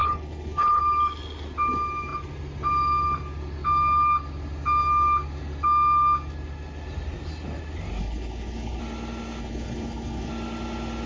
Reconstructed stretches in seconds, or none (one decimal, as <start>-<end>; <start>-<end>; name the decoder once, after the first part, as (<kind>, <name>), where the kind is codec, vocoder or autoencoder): 0.0-0.8 (codec, HILCodec); 8.0-8.8; 9.4-10.3